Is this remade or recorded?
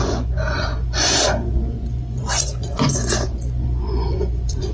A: remade